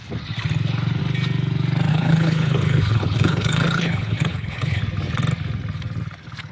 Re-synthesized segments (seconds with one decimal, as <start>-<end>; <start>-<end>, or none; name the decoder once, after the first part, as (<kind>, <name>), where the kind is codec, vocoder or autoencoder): 1.9-4.8 (codec, HILCodec)